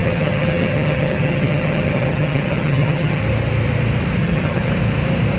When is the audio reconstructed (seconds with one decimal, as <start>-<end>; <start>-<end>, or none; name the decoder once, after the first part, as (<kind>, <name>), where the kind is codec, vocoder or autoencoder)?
0.0-3.2 (vocoder, HiFi-GAN); 4.2-4.7